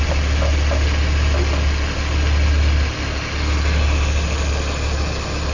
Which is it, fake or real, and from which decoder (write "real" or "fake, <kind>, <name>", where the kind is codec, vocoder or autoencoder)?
real